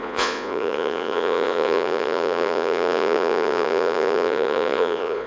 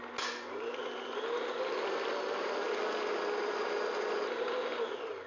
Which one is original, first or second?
second